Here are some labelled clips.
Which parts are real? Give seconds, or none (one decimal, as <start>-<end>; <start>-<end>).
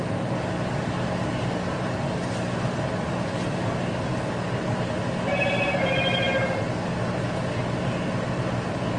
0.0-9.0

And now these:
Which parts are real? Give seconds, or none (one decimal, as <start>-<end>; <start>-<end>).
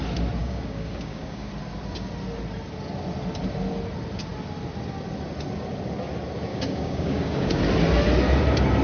0.0-0.4; 1.5-6.5; 7.6-8.8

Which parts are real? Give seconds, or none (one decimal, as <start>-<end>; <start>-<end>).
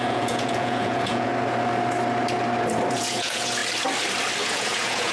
1.3-2.9; 3.6-4.4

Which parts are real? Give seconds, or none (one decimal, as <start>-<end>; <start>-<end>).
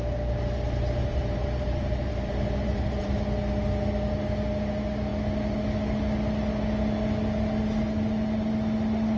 0.0-1.0; 3.2-9.2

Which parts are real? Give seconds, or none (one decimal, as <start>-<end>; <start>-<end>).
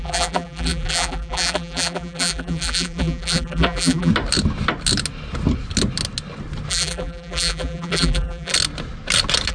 4.1-6.7; 8.5-9.5